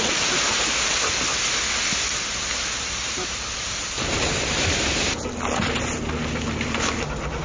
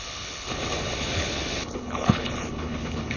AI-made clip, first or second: second